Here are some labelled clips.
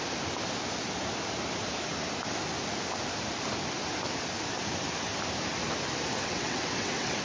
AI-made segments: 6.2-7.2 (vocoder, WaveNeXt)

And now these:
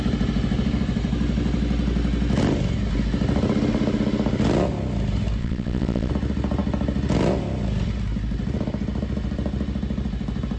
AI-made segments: 5.4-6.1 (vocoder, WaveNeXt)

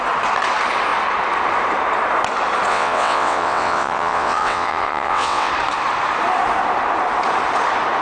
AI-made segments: 2.7-5.5 (vocoder, WaveNeXt)

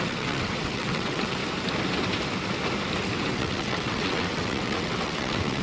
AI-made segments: 0.0-1.4 (vocoder, WaveNeXt); 3.3-5.6

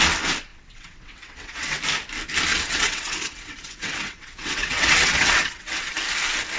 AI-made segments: 0.5-1.8 (vocoder, WaveNeXt); 2.5-5.9

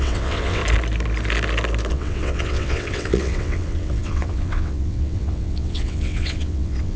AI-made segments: 0.0-0.6 (vocoder, WaveNeXt); 1.9-7.0

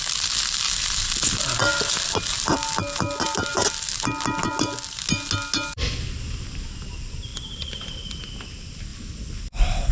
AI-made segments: none

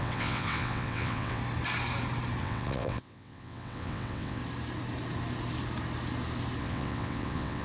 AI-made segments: 0.0-1.4 (vocoder, WaveNeXt); 2.4-4.4; 6.6-7.6